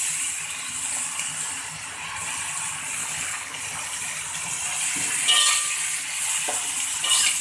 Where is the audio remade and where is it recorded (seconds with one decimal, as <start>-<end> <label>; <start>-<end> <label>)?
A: 0.0-3.0 recorded; 3.0-3.6 remade; 3.6-7.4 recorded